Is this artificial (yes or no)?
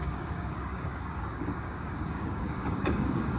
yes